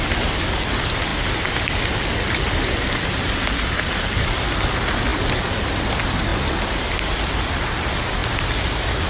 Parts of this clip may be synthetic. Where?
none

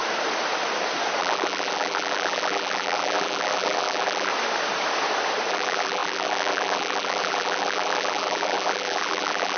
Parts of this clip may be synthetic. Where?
1.2-4.3 (vocoder, BigVGAN v2); 5.5-9.6